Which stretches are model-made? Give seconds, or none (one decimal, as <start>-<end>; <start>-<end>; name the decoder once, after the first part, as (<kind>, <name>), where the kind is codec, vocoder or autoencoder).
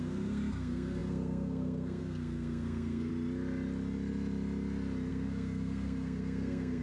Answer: 0.0-3.1 (codec, SNAC); 5.1-6.8